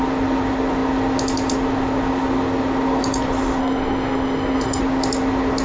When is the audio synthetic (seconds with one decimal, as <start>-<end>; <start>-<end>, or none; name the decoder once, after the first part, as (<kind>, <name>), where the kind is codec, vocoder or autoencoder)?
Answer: 3.6-4.8 (codec, SNAC)